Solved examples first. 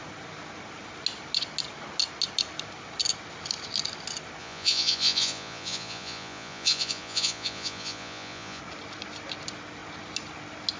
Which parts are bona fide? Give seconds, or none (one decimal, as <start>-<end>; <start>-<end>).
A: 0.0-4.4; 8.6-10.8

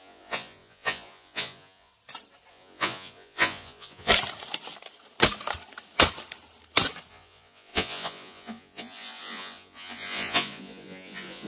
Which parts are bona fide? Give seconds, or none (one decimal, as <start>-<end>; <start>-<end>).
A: 1.9-2.5; 4.1-7.1

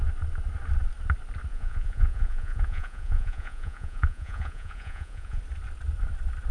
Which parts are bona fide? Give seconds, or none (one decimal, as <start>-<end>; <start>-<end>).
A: 0.0-1.5; 5.4-6.5

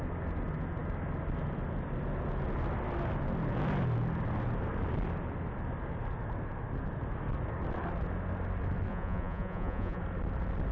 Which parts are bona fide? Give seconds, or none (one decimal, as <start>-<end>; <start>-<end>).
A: 0.0-8.9; 10.0-10.7

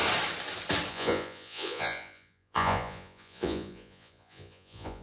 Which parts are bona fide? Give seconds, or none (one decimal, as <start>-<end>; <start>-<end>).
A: 0.0-0.9

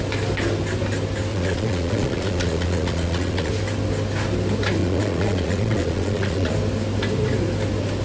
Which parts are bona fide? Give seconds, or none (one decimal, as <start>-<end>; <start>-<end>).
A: 0.0-1.3; 3.5-4.8; 6.5-8.0

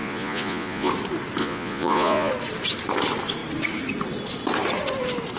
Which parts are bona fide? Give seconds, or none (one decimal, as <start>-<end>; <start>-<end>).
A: 0.9-1.4; 2.3-5.4

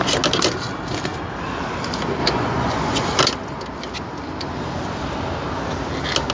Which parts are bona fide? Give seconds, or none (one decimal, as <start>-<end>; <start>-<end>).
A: 0.0-2.2; 3.2-6.3